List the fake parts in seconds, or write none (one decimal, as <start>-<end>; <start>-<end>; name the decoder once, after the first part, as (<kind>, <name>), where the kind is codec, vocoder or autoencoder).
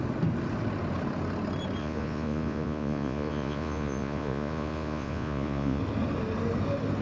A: 1.8-5.8 (vocoder, Vocos)